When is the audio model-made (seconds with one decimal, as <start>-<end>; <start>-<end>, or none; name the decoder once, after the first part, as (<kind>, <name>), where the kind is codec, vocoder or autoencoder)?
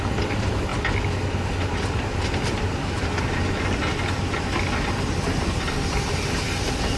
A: none